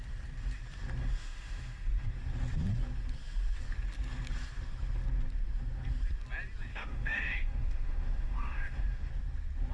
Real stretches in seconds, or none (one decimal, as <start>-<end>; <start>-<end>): 0.0-1.0; 2.1-6.7; 9.1-9.7